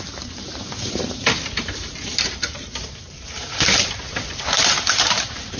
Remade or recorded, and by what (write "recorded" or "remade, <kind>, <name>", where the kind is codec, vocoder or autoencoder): remade, vocoder, BigVGAN v2